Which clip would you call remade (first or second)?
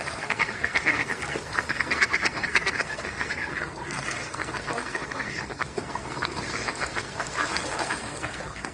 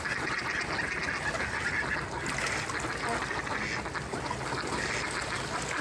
first